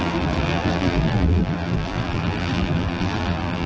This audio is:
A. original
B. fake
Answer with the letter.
B